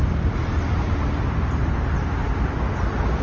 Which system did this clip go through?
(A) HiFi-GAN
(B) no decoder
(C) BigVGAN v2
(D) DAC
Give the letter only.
B